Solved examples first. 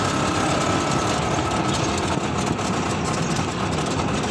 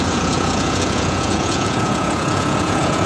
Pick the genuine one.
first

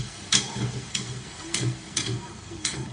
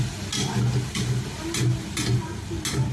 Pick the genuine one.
second